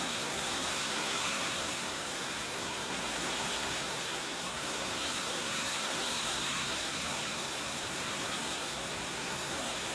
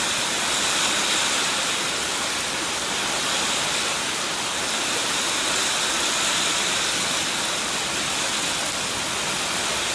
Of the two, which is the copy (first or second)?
first